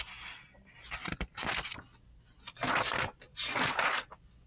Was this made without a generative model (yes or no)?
yes